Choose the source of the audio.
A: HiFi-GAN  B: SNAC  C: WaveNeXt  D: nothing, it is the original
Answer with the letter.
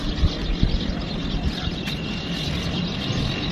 D